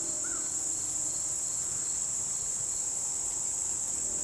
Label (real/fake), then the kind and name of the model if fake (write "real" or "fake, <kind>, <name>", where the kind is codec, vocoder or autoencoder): real